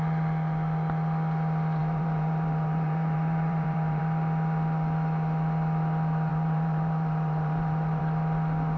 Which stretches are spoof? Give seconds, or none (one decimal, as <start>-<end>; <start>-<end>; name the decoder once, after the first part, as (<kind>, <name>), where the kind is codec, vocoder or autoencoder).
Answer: 1.8-4.0 (vocoder, BigVGAN v2); 6.3-8.0